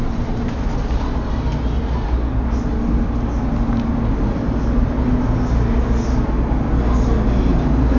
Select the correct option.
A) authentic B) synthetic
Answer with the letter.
A